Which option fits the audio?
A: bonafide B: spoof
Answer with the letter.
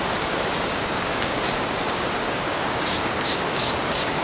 B